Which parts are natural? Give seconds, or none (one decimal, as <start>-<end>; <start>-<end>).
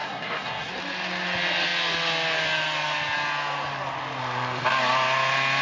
0.7-5.6